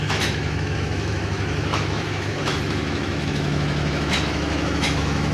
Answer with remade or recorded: remade